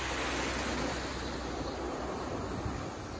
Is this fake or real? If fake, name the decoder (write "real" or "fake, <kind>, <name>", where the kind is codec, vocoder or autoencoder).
real